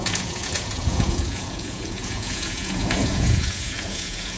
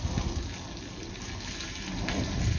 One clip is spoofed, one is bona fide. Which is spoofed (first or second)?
first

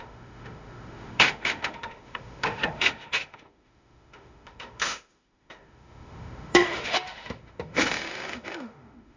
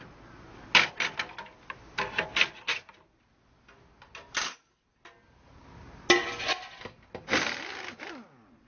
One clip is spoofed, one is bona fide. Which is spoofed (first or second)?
first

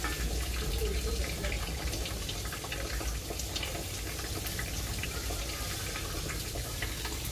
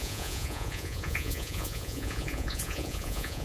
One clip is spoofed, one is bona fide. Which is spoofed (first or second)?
second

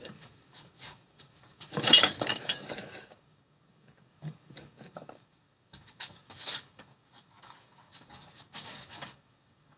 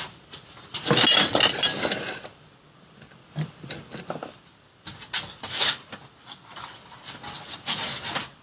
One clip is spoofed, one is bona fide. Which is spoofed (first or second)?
first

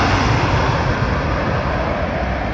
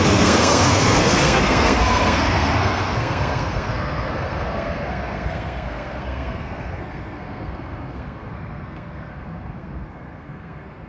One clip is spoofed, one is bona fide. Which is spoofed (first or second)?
second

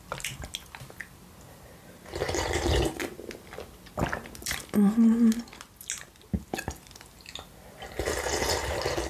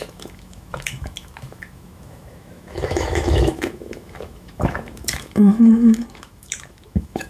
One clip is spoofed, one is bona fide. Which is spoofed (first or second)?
second